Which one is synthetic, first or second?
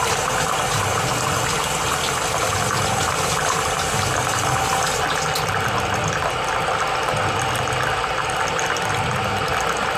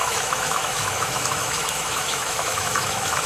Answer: second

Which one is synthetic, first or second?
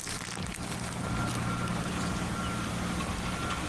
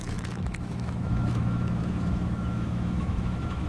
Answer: second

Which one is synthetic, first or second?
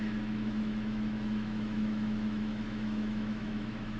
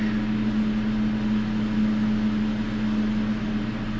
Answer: first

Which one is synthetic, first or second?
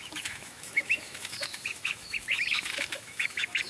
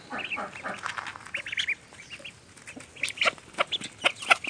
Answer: first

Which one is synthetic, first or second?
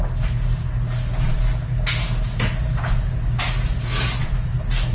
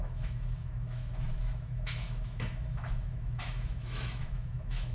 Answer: second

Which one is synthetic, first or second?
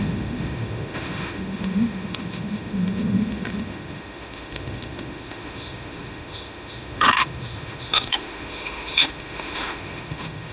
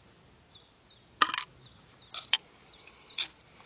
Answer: first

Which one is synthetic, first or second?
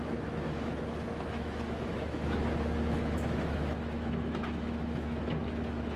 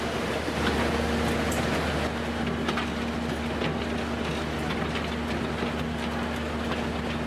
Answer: first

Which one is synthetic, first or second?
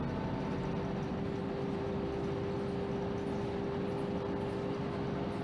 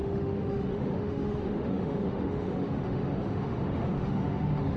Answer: second